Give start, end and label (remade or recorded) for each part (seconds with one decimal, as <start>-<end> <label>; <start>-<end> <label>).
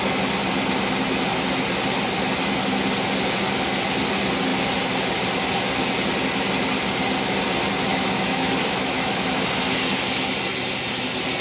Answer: 0.0-7.9 recorded; 7.9-9.4 remade; 9.4-11.4 recorded